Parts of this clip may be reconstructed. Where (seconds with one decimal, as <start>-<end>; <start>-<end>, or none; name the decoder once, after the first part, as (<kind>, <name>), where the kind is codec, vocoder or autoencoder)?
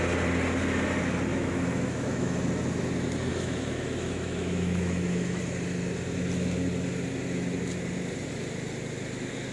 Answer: 1.3-2.4 (autoencoder, DAC-VAE); 3.3-5.4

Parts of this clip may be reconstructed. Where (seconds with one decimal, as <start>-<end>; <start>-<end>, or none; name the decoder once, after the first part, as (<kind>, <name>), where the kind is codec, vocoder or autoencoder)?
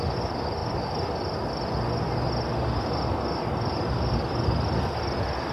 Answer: none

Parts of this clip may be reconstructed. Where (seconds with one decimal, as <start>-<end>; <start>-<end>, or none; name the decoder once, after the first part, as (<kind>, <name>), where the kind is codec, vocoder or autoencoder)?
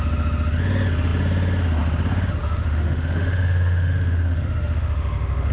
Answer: 2.4-5.5 (autoencoder, DAC-VAE)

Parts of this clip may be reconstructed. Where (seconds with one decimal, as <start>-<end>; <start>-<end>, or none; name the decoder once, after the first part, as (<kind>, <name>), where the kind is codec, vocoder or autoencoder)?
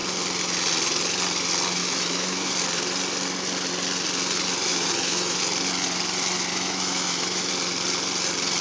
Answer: 1.8-2.5 (autoencoder, DAC-VAE); 4.7-5.4; 6.5-7.5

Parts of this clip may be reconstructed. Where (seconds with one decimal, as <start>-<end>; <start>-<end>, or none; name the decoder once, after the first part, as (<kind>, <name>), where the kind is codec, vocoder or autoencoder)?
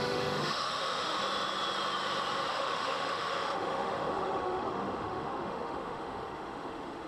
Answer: 0.0-1.2 (autoencoder, DAC-VAE); 2.5-7.1